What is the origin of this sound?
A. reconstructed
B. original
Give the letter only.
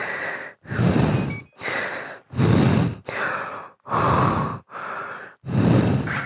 B